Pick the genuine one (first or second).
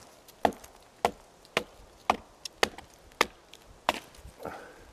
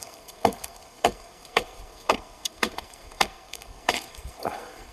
first